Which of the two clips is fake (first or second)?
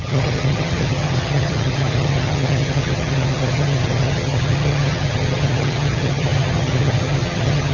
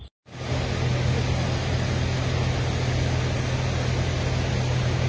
first